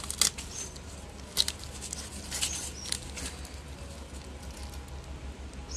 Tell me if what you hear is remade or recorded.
recorded